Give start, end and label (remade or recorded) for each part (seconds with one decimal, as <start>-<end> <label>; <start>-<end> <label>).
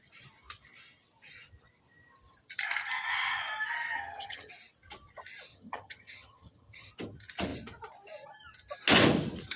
0.0-3.9 recorded; 3.9-4.5 remade; 4.5-5.5 recorded; 5.5-6.9 remade; 6.9-9.6 recorded